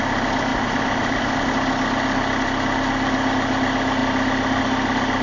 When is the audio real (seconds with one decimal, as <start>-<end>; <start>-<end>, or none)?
0.0-0.5; 1.5-5.2